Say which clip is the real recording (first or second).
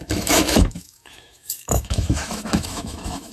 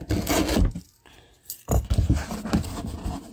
second